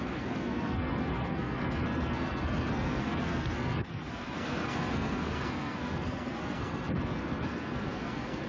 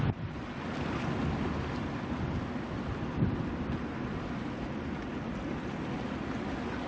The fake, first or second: first